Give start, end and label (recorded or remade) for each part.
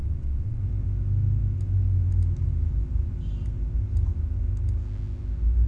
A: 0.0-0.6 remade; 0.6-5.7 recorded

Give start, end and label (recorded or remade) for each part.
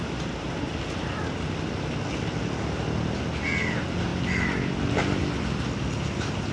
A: 0.0-6.5 recorded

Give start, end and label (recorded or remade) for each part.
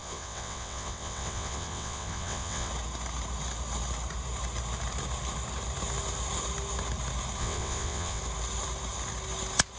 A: 0.0-2.7 remade; 2.7-7.4 recorded; 7.4-8.2 remade; 8.2-9.8 recorded